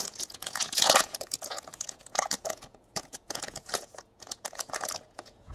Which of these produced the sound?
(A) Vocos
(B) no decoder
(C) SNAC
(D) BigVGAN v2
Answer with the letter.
A